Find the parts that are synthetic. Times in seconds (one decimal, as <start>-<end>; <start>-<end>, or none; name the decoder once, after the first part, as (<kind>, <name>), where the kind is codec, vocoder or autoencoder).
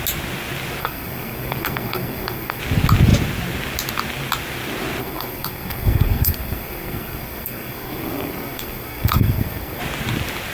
0.8-2.6 (codec, SNAC); 5.0-9.8